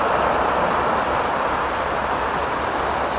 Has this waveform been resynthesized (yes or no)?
yes